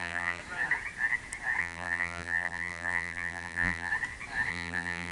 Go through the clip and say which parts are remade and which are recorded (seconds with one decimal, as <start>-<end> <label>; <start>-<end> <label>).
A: 0.0-0.4 remade; 0.4-1.6 recorded; 1.6-3.9 remade; 3.9-4.5 recorded; 4.5-5.1 remade